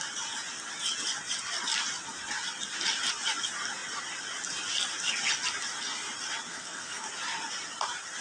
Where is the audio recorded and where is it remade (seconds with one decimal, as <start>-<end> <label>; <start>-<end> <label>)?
0.0-6.5 recorded; 6.5-7.1 remade; 7.1-8.2 recorded